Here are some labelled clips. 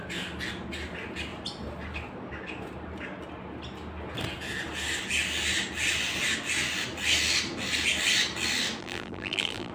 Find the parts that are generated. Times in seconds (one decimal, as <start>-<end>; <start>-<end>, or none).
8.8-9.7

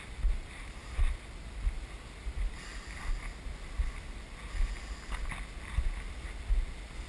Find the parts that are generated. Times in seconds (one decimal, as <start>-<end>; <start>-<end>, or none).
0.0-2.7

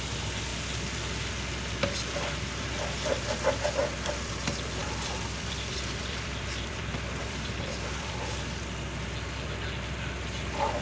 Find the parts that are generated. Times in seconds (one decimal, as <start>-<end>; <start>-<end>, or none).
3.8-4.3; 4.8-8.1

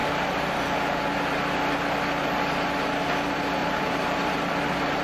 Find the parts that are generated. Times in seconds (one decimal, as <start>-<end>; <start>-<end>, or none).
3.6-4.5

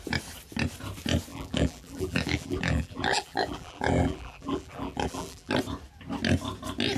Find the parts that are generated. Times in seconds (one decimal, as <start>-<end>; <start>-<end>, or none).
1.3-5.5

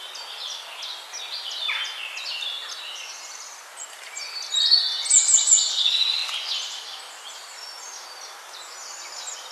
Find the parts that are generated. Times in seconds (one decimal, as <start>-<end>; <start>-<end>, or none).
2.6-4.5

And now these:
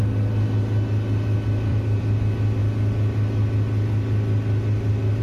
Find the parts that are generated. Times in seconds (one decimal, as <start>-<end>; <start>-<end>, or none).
1.7-2.2